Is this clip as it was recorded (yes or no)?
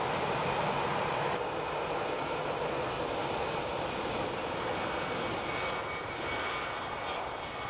yes